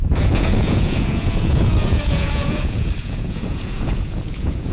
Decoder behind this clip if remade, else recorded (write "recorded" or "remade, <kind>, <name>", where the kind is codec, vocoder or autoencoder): remade, vocoder, Vocos